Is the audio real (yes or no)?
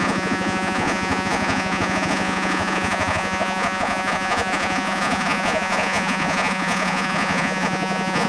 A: no